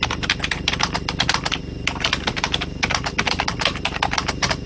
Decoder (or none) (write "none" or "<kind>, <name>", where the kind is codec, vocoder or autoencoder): vocoder, BigVGAN v2